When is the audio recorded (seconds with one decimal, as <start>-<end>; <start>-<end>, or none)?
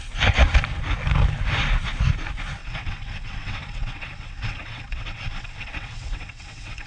0.0-2.6